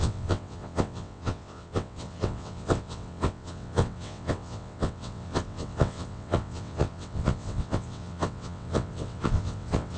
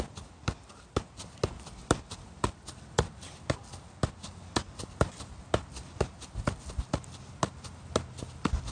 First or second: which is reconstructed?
first